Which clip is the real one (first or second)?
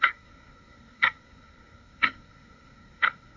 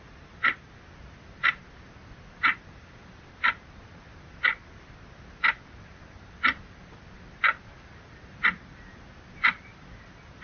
second